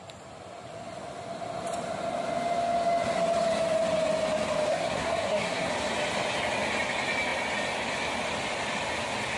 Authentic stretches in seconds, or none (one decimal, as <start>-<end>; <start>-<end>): 0.0-4.7; 5.7-9.4